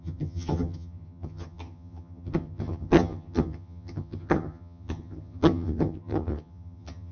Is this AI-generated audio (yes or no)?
yes